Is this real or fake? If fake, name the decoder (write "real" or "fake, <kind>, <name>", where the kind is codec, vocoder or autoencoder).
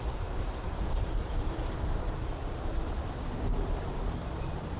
fake, vocoder, BigVGAN v2